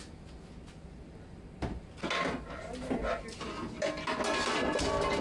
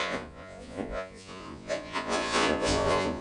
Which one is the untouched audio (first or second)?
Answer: first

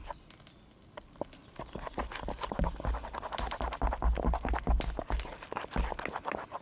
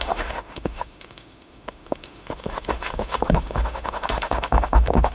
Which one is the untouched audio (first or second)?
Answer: first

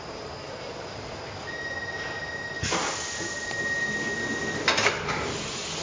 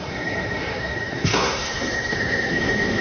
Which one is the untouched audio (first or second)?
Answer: first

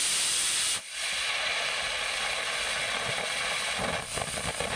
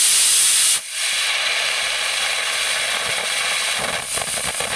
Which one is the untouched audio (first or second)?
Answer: second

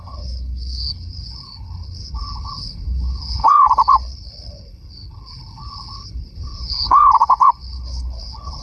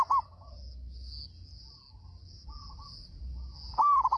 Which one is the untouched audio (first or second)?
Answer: second